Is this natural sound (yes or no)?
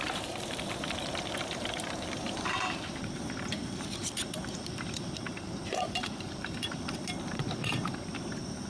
no